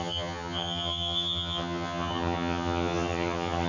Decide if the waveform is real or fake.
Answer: fake